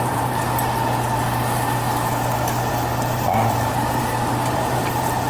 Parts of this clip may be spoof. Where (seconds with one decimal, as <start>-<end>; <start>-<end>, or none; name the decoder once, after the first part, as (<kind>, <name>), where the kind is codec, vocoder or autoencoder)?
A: 0.0-0.4 (vocoder, BigVGAN v2); 2.7-5.3